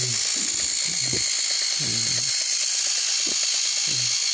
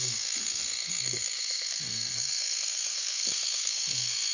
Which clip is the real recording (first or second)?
first